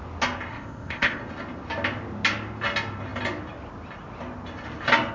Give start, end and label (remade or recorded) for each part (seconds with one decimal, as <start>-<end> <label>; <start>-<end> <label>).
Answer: 0.0-0.5 recorded; 0.5-1.2 remade; 1.2-5.1 recorded

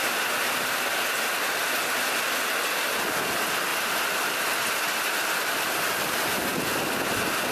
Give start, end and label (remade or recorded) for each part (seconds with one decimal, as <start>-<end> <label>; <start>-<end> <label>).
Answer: 0.0-7.5 recorded

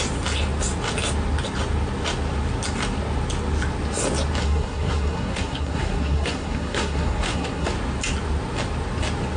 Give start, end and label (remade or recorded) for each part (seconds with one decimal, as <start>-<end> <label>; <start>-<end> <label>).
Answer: 0.0-4.4 recorded; 4.4-7.7 remade; 7.7-9.4 recorded

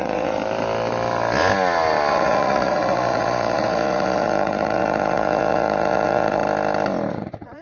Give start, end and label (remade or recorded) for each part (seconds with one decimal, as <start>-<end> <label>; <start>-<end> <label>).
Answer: 0.0-0.4 remade; 0.4-2.1 recorded; 2.1-6.4 remade; 6.4-7.1 recorded; 7.1-7.6 remade